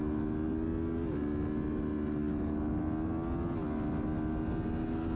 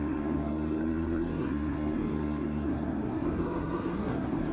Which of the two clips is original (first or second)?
first